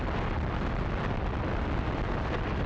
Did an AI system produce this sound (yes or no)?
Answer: no